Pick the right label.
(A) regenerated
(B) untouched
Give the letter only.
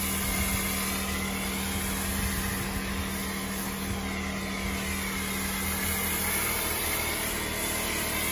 B